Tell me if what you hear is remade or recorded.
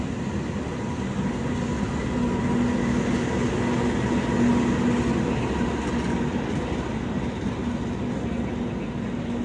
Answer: recorded